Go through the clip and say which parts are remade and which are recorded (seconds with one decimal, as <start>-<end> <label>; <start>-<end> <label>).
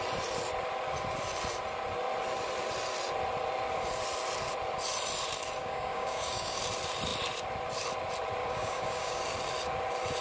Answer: 0.0-5.6 recorded; 5.6-6.6 remade; 6.6-8.4 recorded; 8.4-9.2 remade; 9.2-10.2 recorded